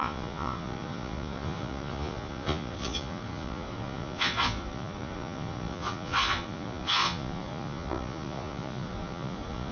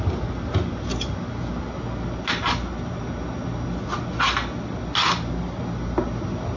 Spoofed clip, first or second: first